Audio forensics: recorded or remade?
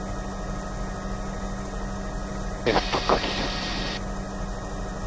recorded